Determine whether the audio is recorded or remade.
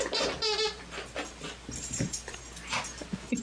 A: recorded